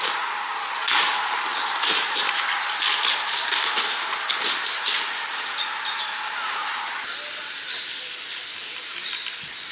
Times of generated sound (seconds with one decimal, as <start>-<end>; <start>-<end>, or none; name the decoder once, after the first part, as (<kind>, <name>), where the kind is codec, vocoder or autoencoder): 1.5-2.2 (vocoder, BigVGAN v2)